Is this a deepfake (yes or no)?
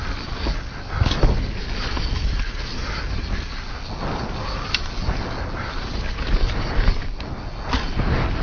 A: no